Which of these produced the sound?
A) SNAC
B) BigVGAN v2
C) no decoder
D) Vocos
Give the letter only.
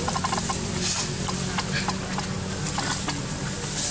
C